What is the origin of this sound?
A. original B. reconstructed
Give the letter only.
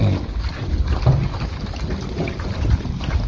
B